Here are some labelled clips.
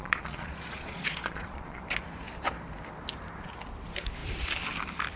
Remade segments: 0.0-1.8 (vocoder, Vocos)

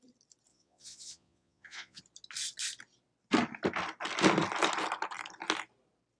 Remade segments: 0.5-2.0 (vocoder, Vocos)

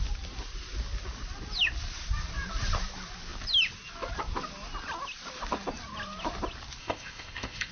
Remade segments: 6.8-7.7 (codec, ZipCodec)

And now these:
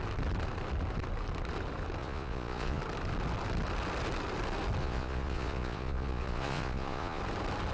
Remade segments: 2.0-2.8 (vocoder, Vocos); 4.8-7.2